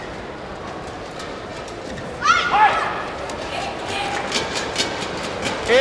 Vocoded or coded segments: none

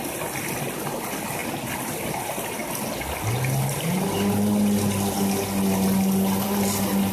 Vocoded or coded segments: none

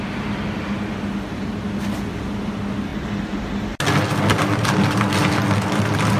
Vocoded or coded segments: none

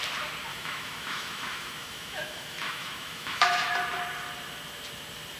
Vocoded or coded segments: 0.5-3.7 (autoencoder, DAC-VAE)

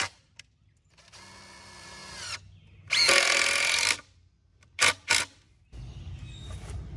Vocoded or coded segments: none